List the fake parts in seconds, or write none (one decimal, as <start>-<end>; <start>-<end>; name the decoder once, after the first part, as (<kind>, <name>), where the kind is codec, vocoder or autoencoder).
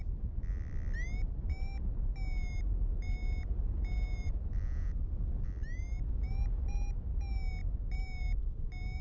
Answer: none